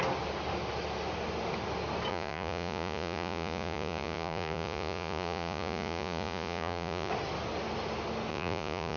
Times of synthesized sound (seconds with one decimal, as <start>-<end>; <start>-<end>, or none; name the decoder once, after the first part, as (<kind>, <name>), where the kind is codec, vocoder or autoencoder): 2.1-7.1 (vocoder, Vocos); 8.3-9.0